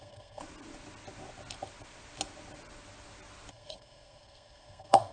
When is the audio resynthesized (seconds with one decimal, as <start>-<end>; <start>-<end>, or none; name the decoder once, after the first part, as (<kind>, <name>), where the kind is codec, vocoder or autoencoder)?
0.0-0.4 (codec, SNAC); 3.5-5.1